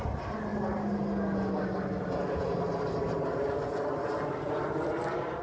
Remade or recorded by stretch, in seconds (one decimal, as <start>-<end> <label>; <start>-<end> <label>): 0.0-5.4 recorded